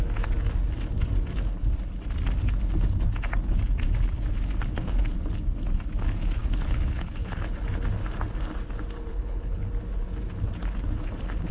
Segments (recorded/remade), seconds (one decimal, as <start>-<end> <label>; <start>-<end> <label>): 0.0-6.4 recorded; 6.4-7.6 remade; 7.6-9.1 recorded; 9.1-9.7 remade; 9.7-11.5 recorded